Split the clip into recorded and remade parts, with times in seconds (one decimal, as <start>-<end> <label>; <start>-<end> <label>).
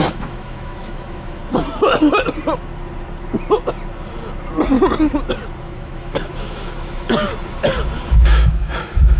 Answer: 0.0-1.4 remade; 1.4-5.6 recorded; 5.6-7.3 remade; 7.3-8.1 recorded; 8.1-9.2 remade